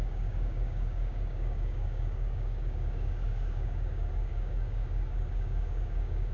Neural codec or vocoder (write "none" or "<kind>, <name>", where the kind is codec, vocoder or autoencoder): codec, DAC